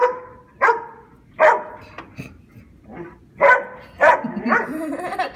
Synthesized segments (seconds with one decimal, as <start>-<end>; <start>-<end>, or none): none